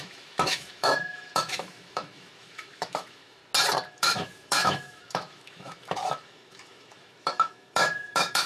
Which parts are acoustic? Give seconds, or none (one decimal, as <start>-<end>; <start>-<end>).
3.4-3.9